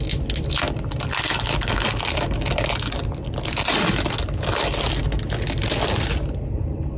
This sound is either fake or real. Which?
real